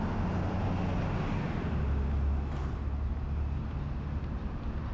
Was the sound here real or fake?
real